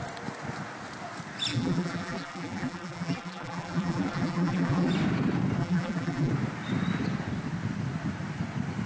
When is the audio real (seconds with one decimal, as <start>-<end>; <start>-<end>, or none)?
0.0-1.5; 4.9-5.6; 6.3-8.9